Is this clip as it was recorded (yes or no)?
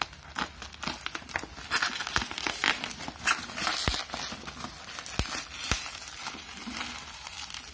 yes